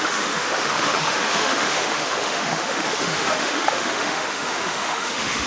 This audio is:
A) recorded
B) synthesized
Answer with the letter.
B